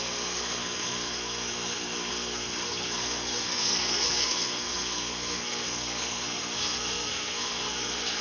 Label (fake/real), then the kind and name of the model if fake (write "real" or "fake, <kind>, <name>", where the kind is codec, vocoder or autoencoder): fake, codec, SNAC